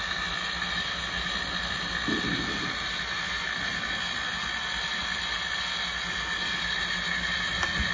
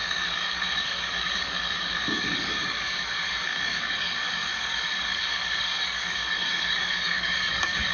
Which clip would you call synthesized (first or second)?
second